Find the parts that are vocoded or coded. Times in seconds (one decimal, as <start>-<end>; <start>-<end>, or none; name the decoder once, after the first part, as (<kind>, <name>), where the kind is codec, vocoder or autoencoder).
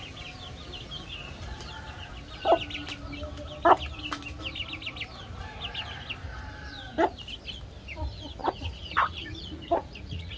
8.4-10.4 (vocoder, Vocos)